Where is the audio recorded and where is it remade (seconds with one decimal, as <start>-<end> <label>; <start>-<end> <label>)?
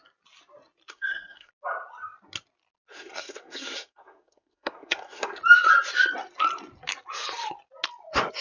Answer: 0.0-0.9 recorded; 0.9-1.5 remade; 1.5-2.9 recorded; 2.9-5.4 remade; 5.4-8.4 recorded